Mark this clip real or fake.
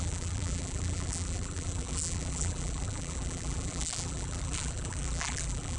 fake